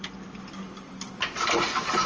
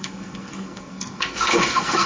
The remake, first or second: second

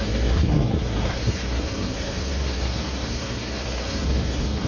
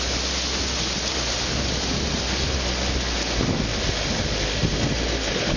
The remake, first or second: first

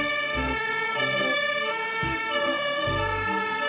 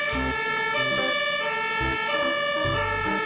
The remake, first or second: first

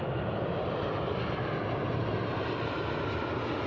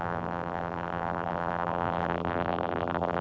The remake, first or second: second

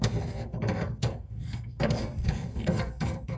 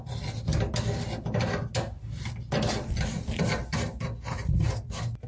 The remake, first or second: first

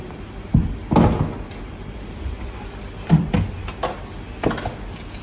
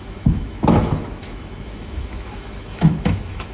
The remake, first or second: second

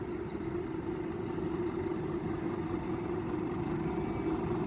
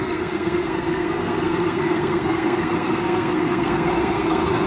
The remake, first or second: second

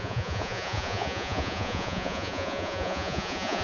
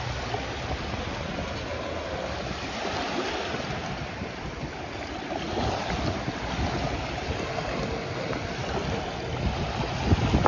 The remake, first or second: first